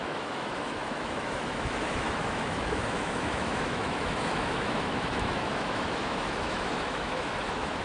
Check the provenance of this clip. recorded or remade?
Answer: remade